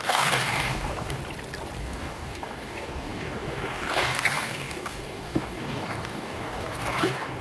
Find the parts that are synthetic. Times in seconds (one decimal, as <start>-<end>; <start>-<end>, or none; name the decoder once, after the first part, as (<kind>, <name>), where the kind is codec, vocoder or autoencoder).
0.0-1.2 (codec, DAC); 1.8-7.4

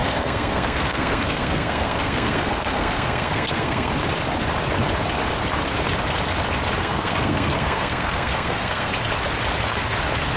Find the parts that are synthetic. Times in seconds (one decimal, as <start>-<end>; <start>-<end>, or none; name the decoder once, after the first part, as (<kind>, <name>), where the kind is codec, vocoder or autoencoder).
0.0-3.9 (codec, SNAC); 6.8-8.9

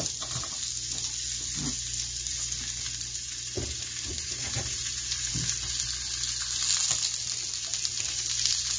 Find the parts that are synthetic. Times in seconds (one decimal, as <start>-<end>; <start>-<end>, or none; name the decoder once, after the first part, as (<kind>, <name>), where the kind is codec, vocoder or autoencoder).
4.1-5.3 (vocoder, BigVGAN v2)

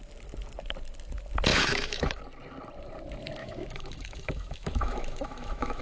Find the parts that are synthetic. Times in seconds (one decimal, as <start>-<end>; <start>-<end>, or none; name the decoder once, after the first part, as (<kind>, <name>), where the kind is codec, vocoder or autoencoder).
1.5-2.2 (autoencoder, DAC-VAE); 3.4-5.8

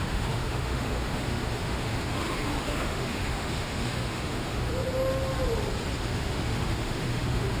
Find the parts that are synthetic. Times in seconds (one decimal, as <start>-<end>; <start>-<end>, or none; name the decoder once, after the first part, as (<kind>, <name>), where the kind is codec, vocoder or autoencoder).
0.0-4.7 (autoencoder, DAC-VAE); 6.0-7.6

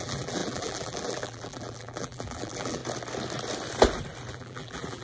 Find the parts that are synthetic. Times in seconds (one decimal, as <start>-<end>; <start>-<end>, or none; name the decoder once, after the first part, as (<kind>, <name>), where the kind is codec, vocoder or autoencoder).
0.0-2.8 (vocoder, BigVGAN v2); 4.3-5.0

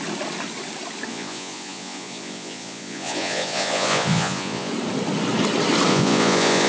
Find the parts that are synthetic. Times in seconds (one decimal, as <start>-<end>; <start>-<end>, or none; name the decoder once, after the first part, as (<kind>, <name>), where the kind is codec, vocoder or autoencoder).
1.1-4.7 (vocoder, Vocos); 5.9-6.7

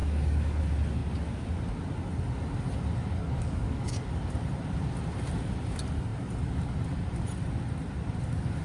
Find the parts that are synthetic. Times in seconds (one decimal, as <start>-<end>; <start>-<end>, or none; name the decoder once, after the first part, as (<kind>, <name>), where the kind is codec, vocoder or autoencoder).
0.0-0.6 (codec, DAC); 3.2-4.1